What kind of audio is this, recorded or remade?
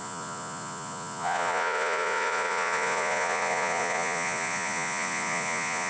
remade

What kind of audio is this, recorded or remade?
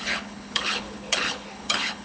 remade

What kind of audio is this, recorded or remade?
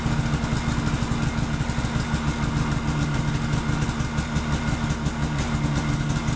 recorded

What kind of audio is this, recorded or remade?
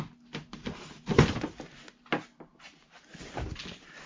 recorded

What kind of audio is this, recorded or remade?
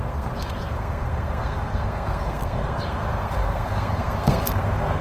remade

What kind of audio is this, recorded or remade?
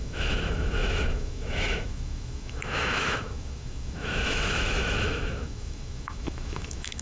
remade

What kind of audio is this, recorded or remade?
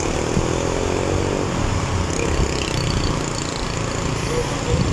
recorded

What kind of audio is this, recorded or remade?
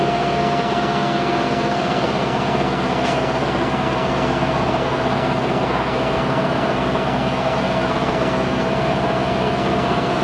remade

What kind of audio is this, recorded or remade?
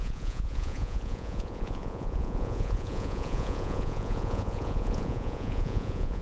remade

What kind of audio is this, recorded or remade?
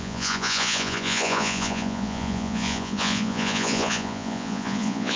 remade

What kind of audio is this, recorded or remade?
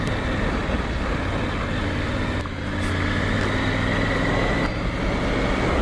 recorded